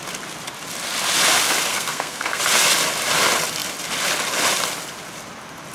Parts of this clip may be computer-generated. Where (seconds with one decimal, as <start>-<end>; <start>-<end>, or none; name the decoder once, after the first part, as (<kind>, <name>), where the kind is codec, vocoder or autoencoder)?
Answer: 1.7-2.4 (codec, SNAC)